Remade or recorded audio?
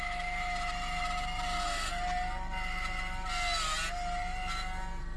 recorded